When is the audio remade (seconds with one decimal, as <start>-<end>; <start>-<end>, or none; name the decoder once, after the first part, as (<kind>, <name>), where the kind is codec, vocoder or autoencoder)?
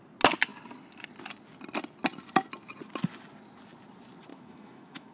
4.3-5.1 (autoencoder, DAC-VAE)